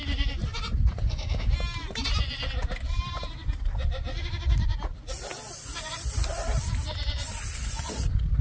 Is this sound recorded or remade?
recorded